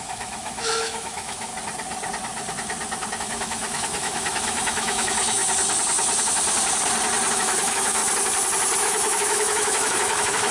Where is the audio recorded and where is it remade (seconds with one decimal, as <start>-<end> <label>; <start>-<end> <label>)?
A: 0.0-1.5 remade; 1.5-3.2 recorded; 3.2-5.4 remade; 5.4-7.3 recorded; 7.3-8.0 remade; 8.0-8.8 recorded; 8.8-10.5 remade